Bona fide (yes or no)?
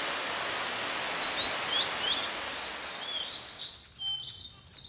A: yes